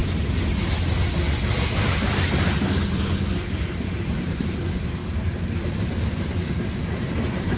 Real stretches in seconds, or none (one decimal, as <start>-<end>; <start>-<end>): 0.0-4.0